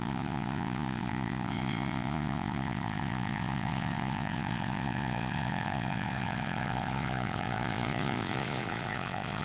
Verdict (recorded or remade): remade